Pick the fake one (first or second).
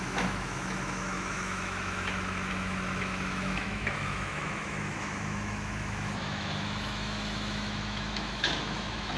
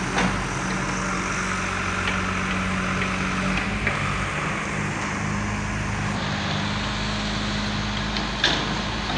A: first